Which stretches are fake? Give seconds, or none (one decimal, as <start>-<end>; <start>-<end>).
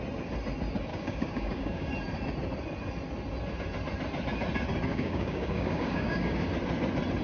0.9-1.9; 4.9-6.5